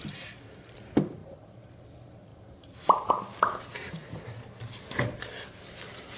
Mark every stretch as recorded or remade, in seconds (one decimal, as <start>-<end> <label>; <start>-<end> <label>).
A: 0.0-1.2 recorded; 1.2-1.8 remade; 1.8-2.3 recorded; 2.3-3.1 remade; 3.1-4.0 recorded; 4.0-4.9 remade; 4.9-6.2 recorded